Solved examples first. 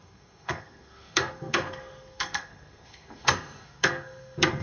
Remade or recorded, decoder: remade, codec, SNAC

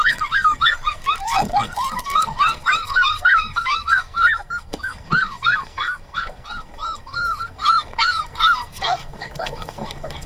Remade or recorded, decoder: remade, codec, SNAC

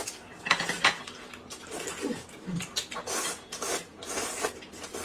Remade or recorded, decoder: recorded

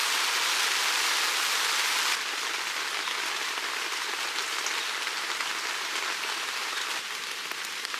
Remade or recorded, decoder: recorded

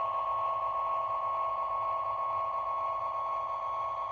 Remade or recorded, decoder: recorded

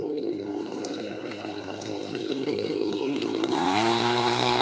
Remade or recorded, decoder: remade, codec, SNAC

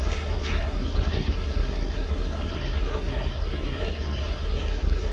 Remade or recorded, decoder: remade, codec, SNAC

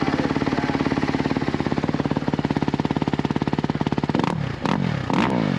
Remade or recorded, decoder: recorded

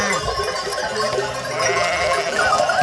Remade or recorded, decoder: recorded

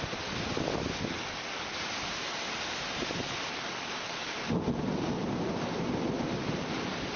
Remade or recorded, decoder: recorded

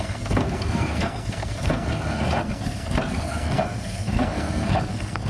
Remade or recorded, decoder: remade, codec, SNAC